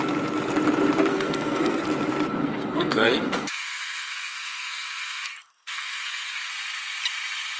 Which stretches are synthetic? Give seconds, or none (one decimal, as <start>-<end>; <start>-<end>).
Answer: 1.1-1.8; 2.4-6.5